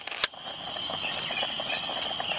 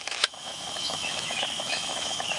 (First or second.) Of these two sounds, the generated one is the second